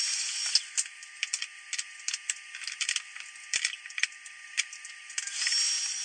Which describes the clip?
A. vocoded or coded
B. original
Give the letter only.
B